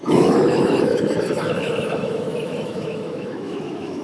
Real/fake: fake